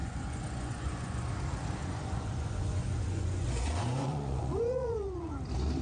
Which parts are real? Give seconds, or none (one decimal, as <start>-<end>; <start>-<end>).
1.3-1.8; 5.3-5.8